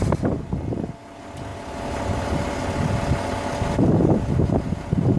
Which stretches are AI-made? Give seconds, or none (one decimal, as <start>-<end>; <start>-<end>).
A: none